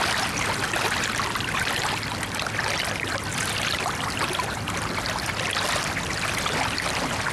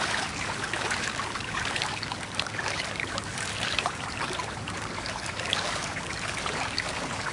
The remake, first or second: second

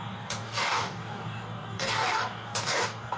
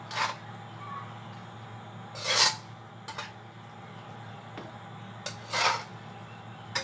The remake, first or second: first